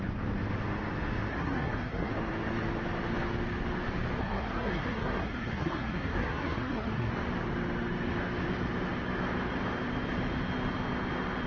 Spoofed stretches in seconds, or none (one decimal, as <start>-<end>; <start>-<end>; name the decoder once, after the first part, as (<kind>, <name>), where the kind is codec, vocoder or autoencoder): 1.3-2.1 (codec, SNAC); 4.2-7.1